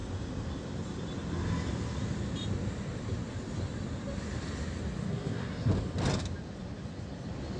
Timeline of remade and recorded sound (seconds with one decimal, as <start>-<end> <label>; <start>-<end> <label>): 0.0-5.1 recorded; 5.1-5.7 remade; 5.7-7.6 recorded